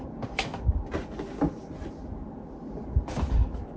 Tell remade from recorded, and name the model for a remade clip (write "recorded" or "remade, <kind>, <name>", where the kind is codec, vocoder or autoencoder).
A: recorded